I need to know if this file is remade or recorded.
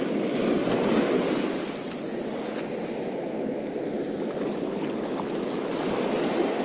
recorded